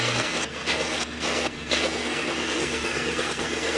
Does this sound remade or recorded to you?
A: remade